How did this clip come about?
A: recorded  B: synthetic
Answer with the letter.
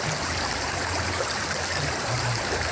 B